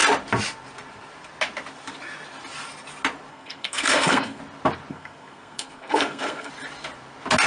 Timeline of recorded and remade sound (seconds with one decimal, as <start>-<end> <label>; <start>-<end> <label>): 0.0-3.3 recorded; 3.3-4.4 remade; 4.4-4.9 recorded; 4.9-6.5 remade; 6.5-7.5 recorded